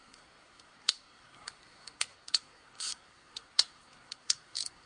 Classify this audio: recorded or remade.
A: remade